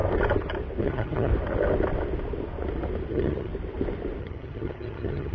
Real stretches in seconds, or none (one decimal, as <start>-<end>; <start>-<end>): 0.0-0.8; 1.3-3.1; 3.5-4.2